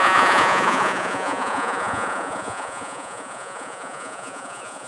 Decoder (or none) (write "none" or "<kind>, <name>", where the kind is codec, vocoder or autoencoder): vocoder, Vocos